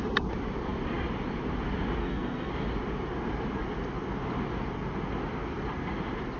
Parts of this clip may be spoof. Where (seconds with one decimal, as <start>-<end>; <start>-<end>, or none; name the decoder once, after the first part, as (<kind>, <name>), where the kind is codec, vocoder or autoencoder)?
2.0-2.5 (codec, SNAC)